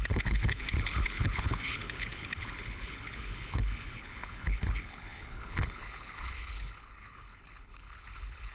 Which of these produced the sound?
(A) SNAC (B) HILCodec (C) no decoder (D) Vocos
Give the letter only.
B